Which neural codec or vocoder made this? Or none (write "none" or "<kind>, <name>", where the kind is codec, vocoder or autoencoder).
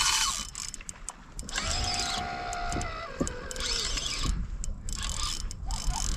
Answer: none